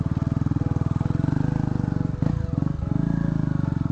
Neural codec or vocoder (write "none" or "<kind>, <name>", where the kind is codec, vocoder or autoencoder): none